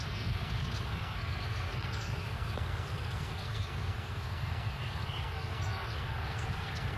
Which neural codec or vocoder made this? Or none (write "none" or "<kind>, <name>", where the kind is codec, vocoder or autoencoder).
codec, SNAC